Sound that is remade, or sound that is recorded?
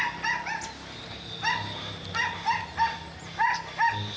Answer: recorded